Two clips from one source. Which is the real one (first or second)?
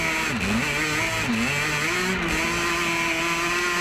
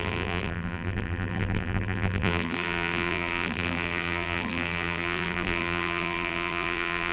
first